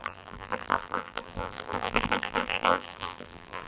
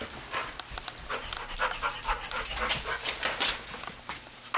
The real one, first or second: second